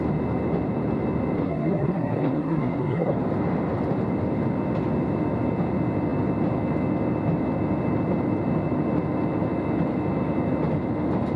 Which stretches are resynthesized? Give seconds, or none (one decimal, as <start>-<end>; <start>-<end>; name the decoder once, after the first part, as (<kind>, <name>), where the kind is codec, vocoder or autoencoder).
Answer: 1.4-3.1 (codec, SNAC)